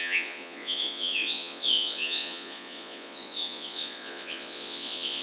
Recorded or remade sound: remade